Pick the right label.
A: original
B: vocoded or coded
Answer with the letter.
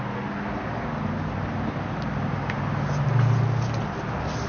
A